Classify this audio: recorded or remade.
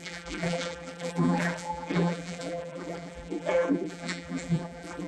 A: remade